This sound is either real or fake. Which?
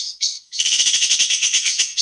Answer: fake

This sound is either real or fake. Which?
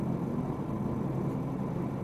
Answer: real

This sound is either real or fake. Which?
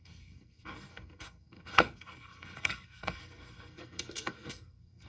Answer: fake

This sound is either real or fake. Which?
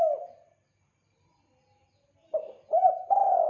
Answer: real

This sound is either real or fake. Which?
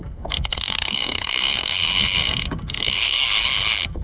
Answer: fake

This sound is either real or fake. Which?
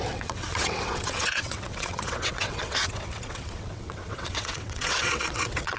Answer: fake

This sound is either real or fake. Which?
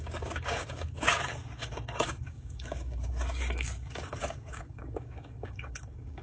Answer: fake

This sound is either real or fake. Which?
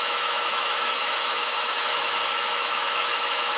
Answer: fake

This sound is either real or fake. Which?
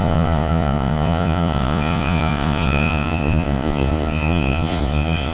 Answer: fake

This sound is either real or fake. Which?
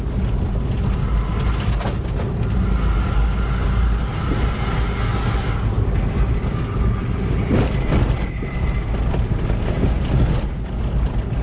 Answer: real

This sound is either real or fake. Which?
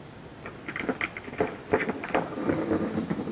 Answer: real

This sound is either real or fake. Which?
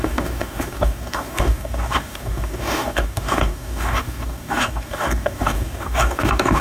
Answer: fake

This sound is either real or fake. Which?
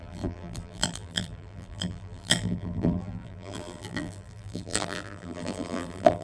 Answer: fake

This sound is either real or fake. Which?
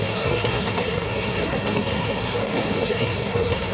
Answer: fake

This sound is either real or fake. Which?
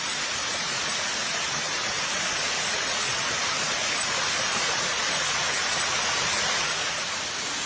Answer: fake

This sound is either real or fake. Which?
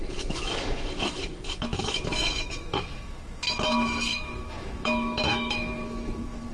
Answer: fake